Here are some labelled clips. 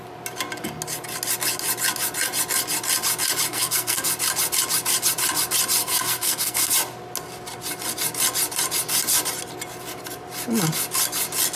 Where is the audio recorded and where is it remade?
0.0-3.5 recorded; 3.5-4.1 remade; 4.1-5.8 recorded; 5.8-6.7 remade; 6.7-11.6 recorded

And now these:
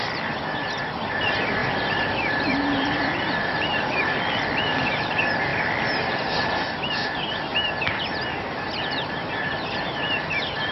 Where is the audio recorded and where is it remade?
0.0-1.6 recorded; 1.6-4.1 remade; 4.1-7.5 recorded; 7.5-8.0 remade; 8.0-10.7 recorded

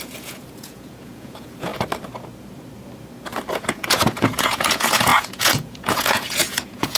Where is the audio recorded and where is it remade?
0.0-1.7 remade; 1.7-3.5 recorded; 3.5-7.0 remade